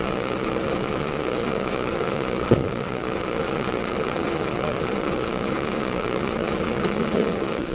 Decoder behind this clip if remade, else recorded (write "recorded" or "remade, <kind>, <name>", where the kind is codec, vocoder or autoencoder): remade, vocoder, Vocos